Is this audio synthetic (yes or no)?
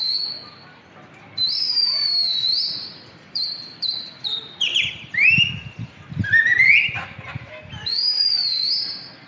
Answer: yes